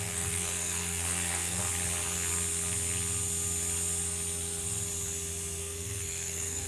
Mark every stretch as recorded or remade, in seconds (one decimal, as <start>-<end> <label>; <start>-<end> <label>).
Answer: 0.0-1.6 remade; 1.6-5.6 recorded; 5.6-6.7 remade